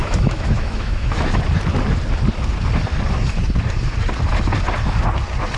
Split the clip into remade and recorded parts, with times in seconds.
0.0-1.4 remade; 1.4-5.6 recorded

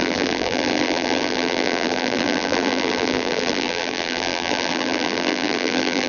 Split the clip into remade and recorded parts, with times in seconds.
0.0-6.1 remade

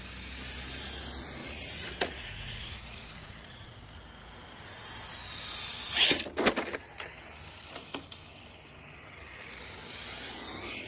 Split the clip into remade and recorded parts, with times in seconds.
0.0-1.4 recorded; 1.4-3.8 remade; 3.8-10.9 recorded

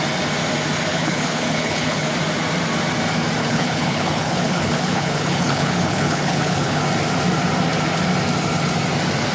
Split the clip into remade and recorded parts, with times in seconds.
0.0-0.9 recorded; 0.9-2.1 remade; 2.1-3.4 recorded; 3.4-6.8 remade; 6.8-9.3 recorded

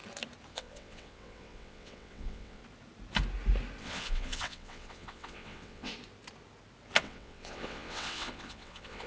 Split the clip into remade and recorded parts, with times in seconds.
0.0-0.5 recorded; 0.5-2.6 remade; 2.6-3.8 recorded; 3.8-5.9 remade; 5.9-7.0 recorded; 7.0-9.1 remade

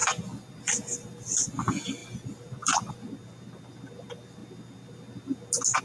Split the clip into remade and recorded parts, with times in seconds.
0.0-0.6 remade; 0.6-2.0 recorded; 2.0-2.9 remade; 2.9-5.8 recorded

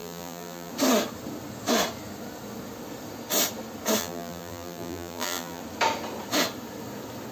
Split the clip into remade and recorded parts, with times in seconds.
0.0-0.7 remade; 0.7-4.0 recorded; 4.0-5.6 remade; 5.6-7.3 recorded